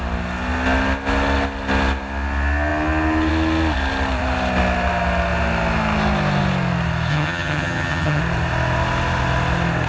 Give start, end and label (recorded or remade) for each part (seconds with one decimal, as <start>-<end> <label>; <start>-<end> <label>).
0.0-7.1 recorded; 7.1-8.2 remade; 8.2-9.9 recorded